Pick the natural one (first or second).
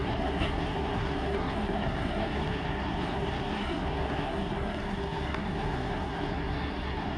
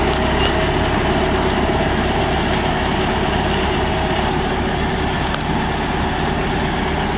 second